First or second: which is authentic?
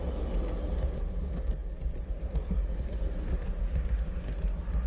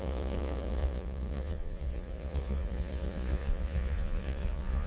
first